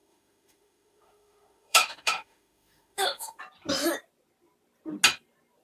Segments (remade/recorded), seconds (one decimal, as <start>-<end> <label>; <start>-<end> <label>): 0.0-3.4 remade; 3.4-5.6 recorded